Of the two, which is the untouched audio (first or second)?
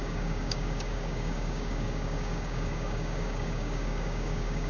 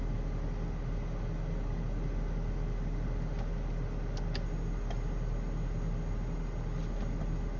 second